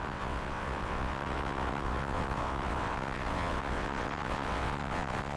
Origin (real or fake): fake